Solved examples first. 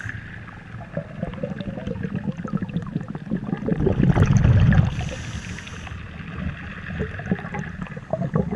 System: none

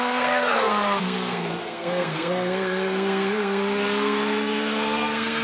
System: codec, SNAC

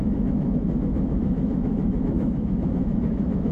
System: autoencoder, DAC-VAE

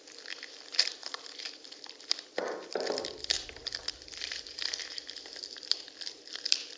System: vocoder, BigVGAN v2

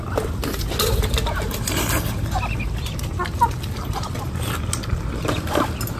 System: none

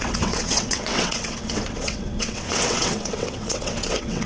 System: vocoder, WaveNeXt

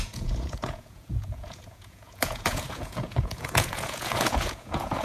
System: vocoder, Vocos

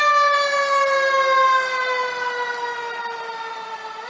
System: none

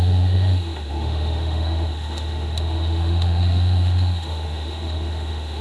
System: autoencoder, DAC-VAE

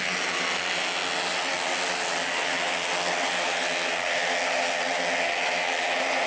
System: none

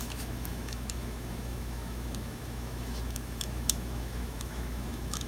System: autoencoder, DAC-VAE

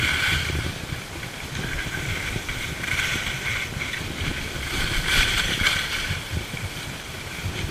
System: none